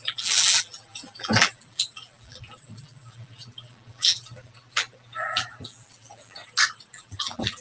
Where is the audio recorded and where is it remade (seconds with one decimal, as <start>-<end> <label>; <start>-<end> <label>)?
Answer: 0.0-6.4 remade; 6.4-6.9 recorded; 6.9-7.6 remade